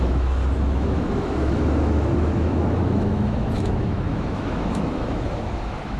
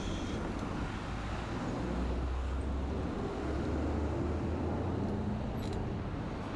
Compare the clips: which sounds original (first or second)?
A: second